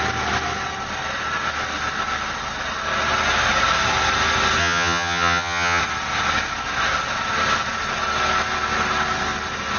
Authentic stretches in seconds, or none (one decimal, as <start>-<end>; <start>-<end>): 0.0-4.6; 5.8-9.8